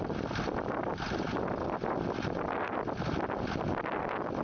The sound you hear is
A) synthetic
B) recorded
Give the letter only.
B